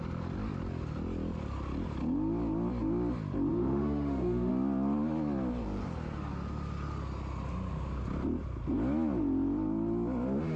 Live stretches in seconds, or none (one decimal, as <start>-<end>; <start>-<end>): 0.0-3.5; 4.5-10.6